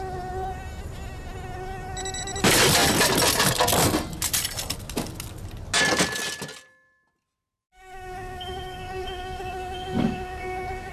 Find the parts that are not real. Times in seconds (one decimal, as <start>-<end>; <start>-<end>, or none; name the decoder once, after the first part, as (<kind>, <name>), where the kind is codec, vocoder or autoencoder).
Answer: 7.6-10.9 (codec, DAC)